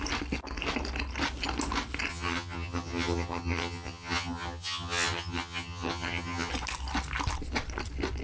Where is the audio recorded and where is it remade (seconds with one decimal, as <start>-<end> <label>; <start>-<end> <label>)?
0.0-2.1 recorded; 2.1-6.5 remade; 6.5-8.2 recorded